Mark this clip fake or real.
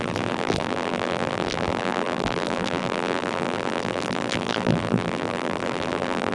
fake